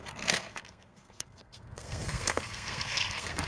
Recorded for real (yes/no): no